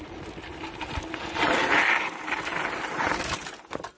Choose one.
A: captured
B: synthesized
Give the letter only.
A